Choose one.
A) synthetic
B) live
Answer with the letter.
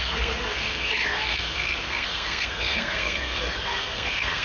A